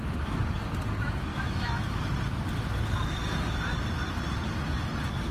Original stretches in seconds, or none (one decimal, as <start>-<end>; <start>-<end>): 0.0-1.3; 2.0-5.3

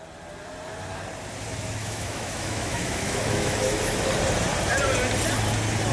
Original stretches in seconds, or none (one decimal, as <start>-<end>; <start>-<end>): 0.0-1.8; 4.1-5.9

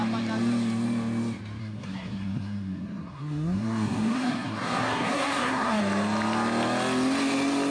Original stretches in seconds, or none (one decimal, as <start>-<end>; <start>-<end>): 0.0-1.6; 5.8-7.7

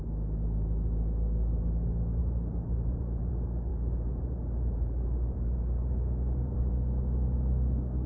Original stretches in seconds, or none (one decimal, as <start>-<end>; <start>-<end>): 0.0-2.2; 3.3-3.7; 6.7-8.1